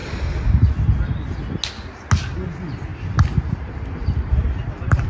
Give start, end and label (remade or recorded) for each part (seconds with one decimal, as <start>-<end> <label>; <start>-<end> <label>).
0.0-2.9 recorded; 2.9-5.1 remade